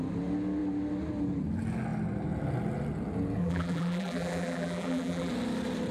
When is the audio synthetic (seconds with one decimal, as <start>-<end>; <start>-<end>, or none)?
3.4-5.3